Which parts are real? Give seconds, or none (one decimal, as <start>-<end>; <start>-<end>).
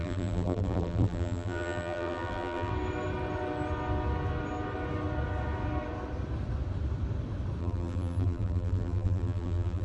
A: 2.7-7.6